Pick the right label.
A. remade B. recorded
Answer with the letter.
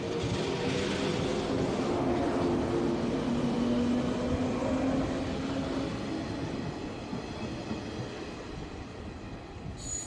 B